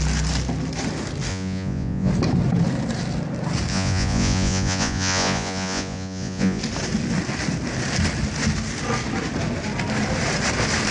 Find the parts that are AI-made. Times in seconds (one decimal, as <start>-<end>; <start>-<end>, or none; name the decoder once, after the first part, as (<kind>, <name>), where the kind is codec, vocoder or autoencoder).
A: 1.3-2.1 (vocoder, Vocos); 3.7-6.6